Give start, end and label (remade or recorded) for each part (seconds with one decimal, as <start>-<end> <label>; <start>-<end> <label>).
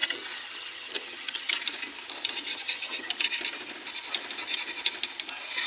0.0-1.5 remade; 1.5-2.5 recorded; 2.5-3.1 remade; 3.1-5.7 recorded